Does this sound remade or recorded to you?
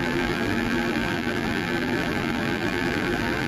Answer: remade